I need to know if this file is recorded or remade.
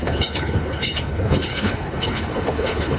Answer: remade